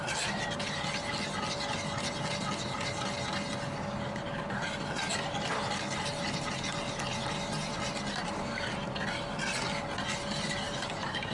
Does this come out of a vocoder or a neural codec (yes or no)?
no